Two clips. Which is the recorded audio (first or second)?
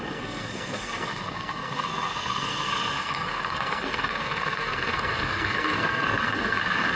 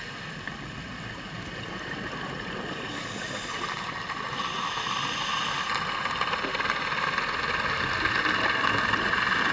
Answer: second